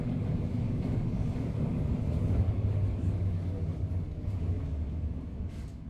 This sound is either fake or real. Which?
fake